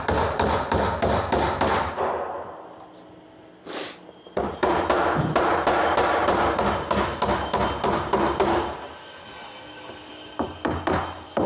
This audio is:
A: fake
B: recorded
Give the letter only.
B